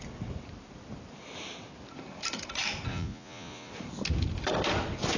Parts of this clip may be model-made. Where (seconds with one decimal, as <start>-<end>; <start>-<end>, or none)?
2.9-3.7